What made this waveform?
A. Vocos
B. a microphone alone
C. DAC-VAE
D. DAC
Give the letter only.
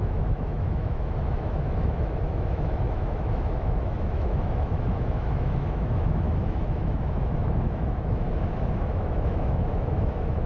C